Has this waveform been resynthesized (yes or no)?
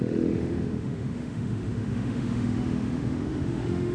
yes